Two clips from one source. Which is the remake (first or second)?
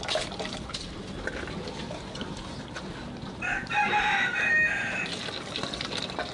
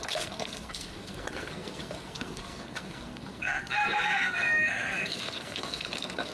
second